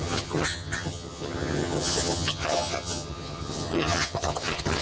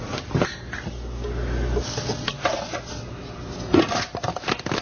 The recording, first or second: second